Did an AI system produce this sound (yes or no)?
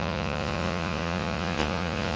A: yes